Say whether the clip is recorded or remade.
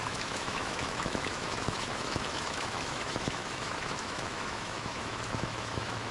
remade